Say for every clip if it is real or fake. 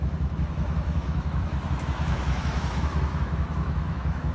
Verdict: fake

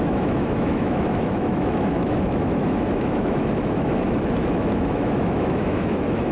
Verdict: fake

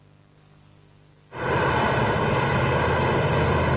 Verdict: real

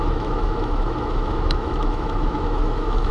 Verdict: fake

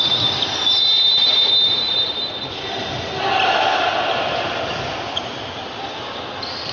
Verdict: real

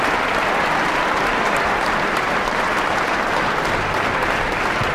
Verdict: real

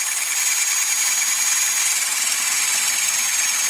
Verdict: real